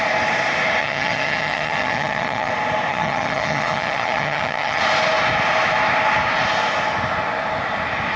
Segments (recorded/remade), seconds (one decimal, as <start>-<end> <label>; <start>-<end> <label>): 0.0-0.8 recorded; 0.8-2.5 remade; 2.5-2.9 recorded; 2.9-4.8 remade; 4.8-8.2 recorded